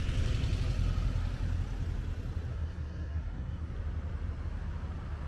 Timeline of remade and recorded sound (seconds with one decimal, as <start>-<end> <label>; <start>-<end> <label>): 0.0-2.5 recorded; 2.5-3.7 remade; 3.7-5.3 recorded